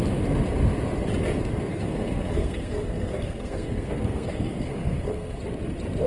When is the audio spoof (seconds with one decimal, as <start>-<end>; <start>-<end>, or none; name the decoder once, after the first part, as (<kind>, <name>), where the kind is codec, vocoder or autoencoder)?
1.7-5.4 (codec, SNAC)